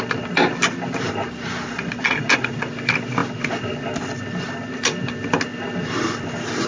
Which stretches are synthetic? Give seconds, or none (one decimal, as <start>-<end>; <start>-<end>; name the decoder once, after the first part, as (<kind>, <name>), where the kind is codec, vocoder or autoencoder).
1.7-2.7 (vocoder, Vocos)